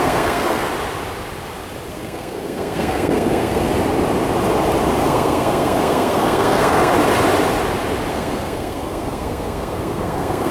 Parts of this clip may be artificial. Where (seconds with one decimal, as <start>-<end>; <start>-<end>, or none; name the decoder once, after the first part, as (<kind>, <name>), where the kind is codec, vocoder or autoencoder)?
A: 0.0-0.7 (codec, SNAC); 1.9-3.7; 5.0-6.9; 8.1-10.5